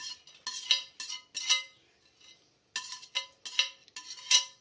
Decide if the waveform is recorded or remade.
recorded